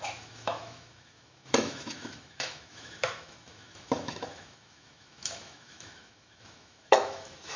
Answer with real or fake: fake